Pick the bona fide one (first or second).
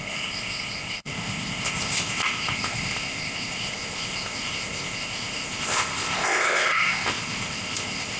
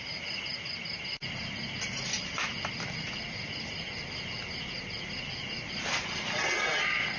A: second